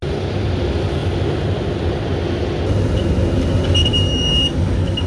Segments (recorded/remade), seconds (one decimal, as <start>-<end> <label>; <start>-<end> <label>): 0.0-3.9 recorded; 3.9-5.1 remade